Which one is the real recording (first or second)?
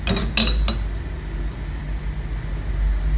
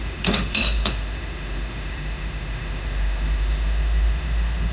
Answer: first